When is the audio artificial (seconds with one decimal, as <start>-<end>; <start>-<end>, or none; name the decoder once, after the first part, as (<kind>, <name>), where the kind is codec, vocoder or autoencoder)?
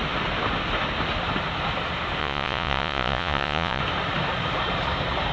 2.2-3.8 (vocoder, Vocos)